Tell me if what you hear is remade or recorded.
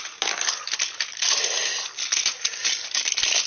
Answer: recorded